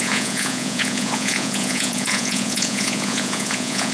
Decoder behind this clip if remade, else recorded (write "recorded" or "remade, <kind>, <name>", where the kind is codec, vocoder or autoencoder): remade, vocoder, Vocos